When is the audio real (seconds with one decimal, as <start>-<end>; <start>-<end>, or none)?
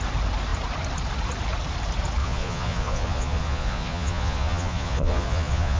0.0-2.2